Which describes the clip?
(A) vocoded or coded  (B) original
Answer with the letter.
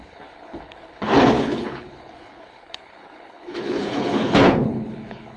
A